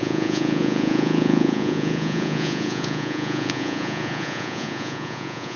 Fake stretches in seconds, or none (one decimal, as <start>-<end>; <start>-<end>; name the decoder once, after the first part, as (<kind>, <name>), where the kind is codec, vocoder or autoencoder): 0.0-5.6 (vocoder, Vocos)